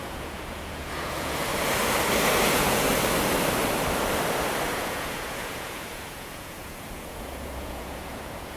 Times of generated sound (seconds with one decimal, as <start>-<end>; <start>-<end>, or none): 0.0-1.5; 2.5-2.9; 4.7-8.6